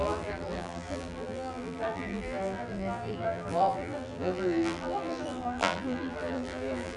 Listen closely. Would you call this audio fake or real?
fake